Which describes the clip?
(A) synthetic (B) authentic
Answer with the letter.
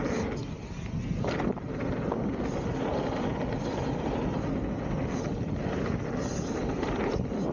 B